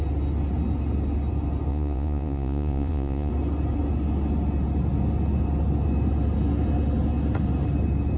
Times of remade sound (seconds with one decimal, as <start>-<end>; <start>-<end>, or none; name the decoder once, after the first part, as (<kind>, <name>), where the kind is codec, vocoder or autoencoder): 1.7-3.3 (vocoder, Vocos)